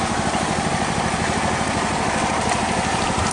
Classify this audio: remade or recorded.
recorded